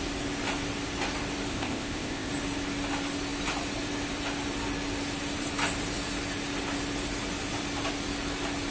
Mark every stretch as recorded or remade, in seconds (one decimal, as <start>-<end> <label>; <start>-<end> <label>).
0.0-1.5 recorded; 1.5-2.3 remade; 2.3-8.7 recorded